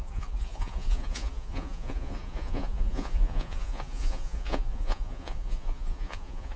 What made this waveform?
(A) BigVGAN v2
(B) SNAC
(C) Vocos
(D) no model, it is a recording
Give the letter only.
C